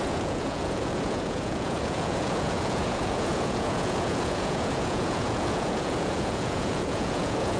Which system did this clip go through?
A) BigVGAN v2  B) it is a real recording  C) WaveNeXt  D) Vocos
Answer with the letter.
D